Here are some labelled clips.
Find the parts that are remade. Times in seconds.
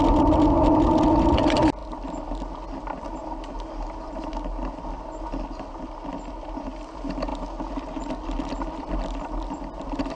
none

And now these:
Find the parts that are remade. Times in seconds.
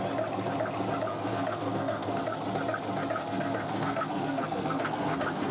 1.1-2.2; 3.2-5.5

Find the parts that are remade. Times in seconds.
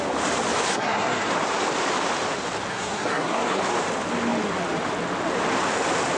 0.7-1.3; 2.7-3.6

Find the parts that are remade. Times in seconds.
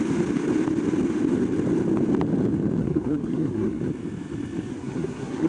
2.8-3.8; 4.7-5.5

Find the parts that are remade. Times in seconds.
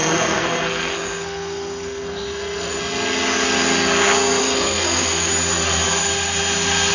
0.0-2.8; 4.4-5.3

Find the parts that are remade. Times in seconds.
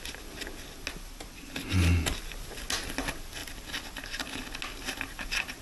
none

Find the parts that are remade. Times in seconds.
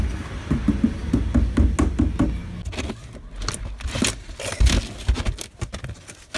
none